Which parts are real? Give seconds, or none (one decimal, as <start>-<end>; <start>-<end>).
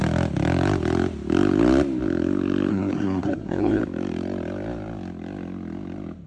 0.0-2.7; 3.8-6.3